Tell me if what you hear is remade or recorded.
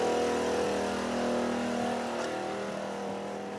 recorded